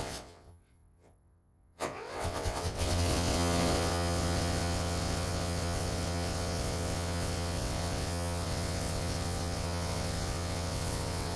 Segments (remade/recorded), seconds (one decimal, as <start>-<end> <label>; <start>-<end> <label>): 0.0-11.4 remade